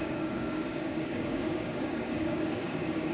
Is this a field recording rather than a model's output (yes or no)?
no